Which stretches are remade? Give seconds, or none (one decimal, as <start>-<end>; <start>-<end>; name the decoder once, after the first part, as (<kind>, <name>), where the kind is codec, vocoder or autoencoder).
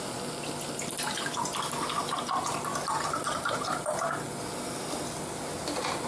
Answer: 2.7-3.9 (vocoder, BigVGAN v2)